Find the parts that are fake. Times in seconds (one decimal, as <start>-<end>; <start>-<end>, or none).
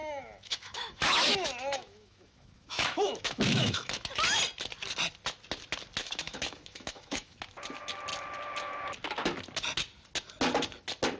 0.0-4.1; 6.0-7.4